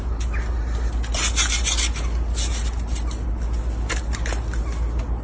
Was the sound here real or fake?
real